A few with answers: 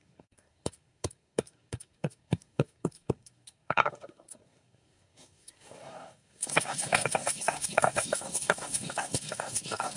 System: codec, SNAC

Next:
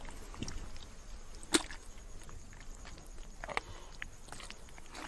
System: none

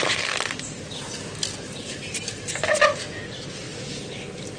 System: none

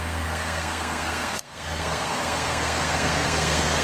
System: codec, SNAC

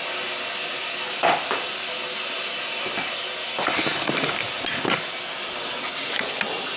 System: none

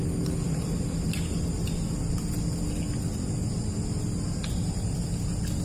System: none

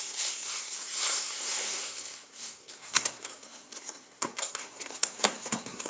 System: codec, SNAC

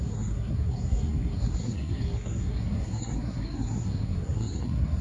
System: codec, SNAC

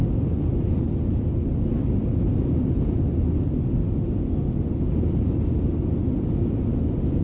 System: none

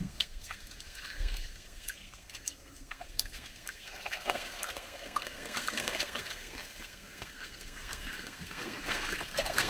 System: codec, SNAC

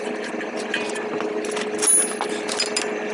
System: none